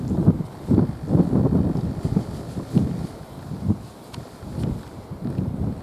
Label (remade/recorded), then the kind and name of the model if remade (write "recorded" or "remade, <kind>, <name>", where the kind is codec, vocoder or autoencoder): recorded